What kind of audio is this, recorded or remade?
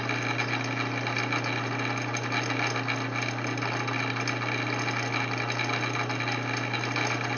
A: recorded